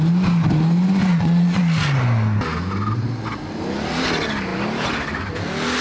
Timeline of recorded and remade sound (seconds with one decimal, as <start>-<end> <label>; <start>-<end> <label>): 0.0-1.1 recorded; 1.1-1.6 remade; 1.6-5.8 recorded